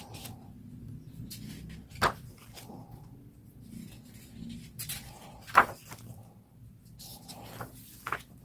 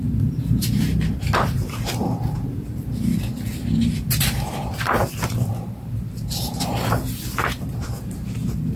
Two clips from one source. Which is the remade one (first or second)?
second